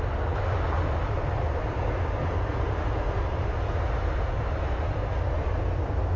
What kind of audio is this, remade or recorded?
recorded